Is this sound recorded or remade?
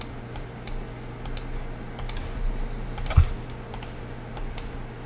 recorded